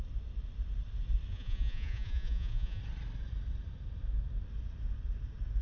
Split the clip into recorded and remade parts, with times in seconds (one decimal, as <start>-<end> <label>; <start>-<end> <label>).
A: 0.0-1.3 recorded; 1.3-2.8 remade; 2.8-5.6 recorded